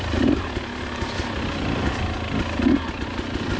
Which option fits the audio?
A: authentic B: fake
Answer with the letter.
A